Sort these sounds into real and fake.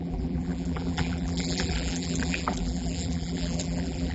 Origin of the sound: fake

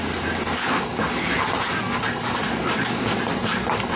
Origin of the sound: real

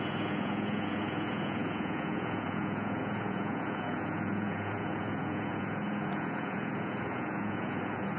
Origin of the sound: fake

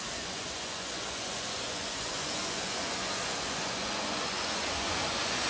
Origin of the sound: fake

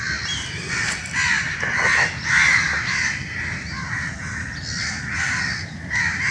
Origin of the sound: real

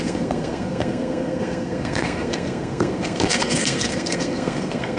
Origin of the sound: fake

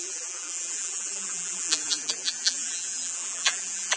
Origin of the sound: fake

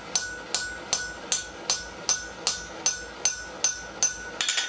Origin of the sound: real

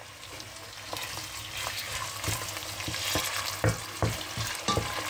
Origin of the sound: real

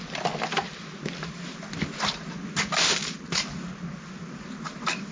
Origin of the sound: real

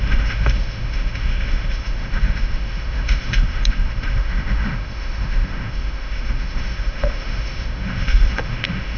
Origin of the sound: fake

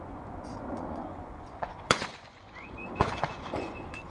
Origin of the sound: fake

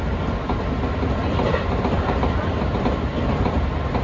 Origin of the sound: real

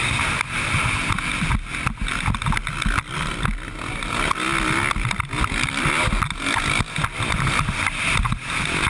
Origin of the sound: real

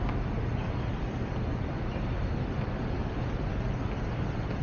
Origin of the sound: real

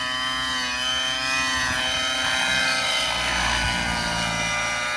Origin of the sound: real